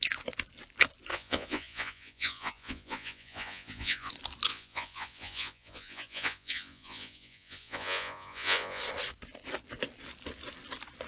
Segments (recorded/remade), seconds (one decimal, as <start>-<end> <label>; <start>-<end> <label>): 0.0-1.1 recorded; 1.1-4.1 remade; 4.1-4.5 recorded; 4.5-8.8 remade; 8.8-11.1 recorded